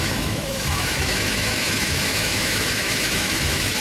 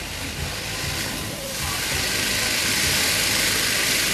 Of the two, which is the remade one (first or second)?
first